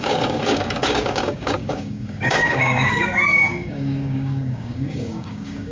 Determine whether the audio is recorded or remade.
remade